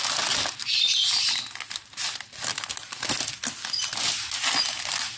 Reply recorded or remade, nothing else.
recorded